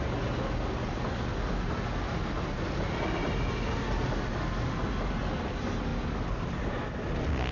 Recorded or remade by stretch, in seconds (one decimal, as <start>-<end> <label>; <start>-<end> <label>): 0.0-7.5 recorded